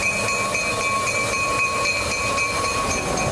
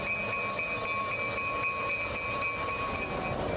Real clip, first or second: second